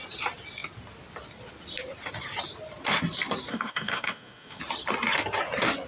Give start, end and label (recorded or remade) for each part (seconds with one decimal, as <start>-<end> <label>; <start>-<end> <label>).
0.0-3.5 recorded; 3.5-4.6 remade; 4.6-5.9 recorded